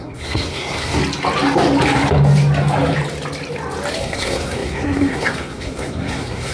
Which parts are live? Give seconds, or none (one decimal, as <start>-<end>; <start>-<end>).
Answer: 1.0-4.0